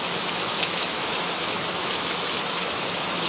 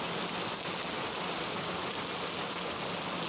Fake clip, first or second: first